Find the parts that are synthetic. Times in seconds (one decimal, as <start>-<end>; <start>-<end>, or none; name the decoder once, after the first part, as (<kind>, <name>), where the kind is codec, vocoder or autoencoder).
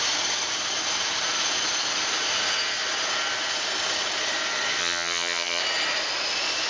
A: 4.8-5.6 (vocoder, HiFi-GAN)